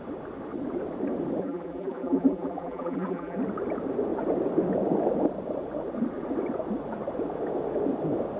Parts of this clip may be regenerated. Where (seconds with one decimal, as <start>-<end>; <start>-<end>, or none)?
1.4-3.4